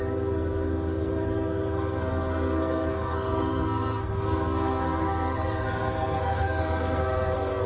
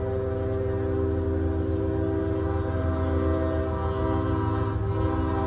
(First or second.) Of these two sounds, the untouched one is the second